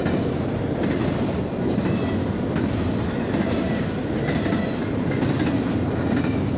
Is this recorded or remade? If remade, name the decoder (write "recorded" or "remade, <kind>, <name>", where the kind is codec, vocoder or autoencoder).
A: recorded